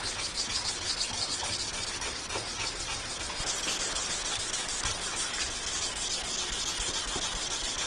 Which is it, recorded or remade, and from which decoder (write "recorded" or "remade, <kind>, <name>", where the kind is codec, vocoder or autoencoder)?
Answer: recorded